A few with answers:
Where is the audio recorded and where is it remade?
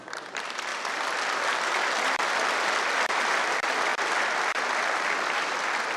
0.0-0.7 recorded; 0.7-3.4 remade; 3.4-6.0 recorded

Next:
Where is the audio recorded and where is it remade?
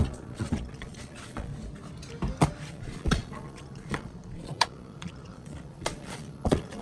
0.0-1.5 remade; 1.5-2.7 recorded; 2.7-6.8 remade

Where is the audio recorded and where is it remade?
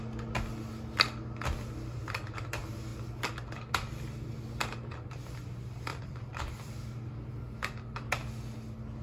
0.0-5.9 recorded; 5.9-7.3 remade; 7.3-9.0 recorded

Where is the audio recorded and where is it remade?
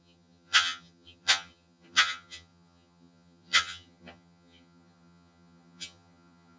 0.0-6.6 remade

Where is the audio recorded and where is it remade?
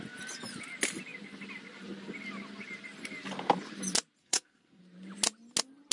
0.0-4.2 recorded; 4.2-4.8 remade; 4.8-5.9 recorded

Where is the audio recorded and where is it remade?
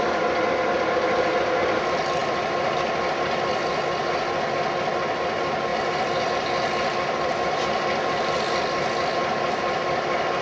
0.0-2.2 recorded; 2.2-4.1 remade; 4.1-5.7 recorded; 5.7-6.3 remade; 6.3-9.2 recorded; 9.2-10.4 remade